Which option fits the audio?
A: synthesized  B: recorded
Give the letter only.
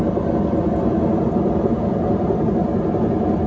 B